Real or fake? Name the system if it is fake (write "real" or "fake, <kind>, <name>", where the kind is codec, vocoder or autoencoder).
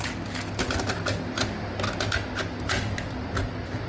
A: real